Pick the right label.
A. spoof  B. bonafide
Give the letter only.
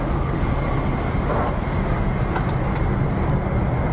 B